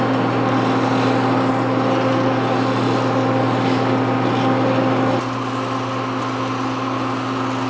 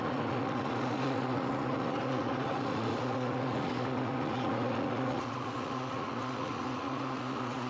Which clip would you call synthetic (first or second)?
second